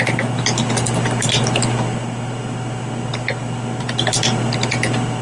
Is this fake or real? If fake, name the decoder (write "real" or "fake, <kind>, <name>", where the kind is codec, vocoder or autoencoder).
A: real